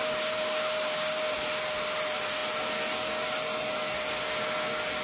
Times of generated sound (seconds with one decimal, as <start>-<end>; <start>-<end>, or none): none